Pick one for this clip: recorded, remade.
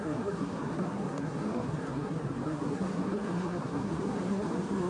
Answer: remade